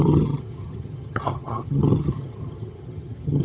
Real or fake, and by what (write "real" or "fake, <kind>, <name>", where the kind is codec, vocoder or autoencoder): fake, vocoder, HiFi-GAN